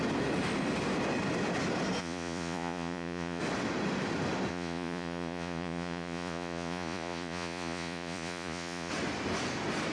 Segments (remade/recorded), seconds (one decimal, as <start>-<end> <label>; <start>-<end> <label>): 0.0-2.0 recorded; 2.0-3.4 remade; 3.4-4.5 recorded; 4.5-8.9 remade; 8.9-9.9 recorded